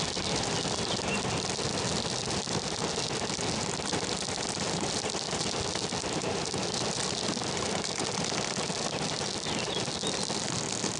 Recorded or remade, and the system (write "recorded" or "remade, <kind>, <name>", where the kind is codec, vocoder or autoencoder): recorded